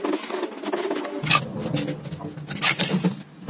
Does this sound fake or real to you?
real